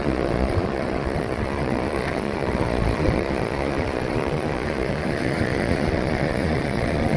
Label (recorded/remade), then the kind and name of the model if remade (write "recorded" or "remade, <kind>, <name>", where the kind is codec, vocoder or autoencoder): remade, vocoder, Vocos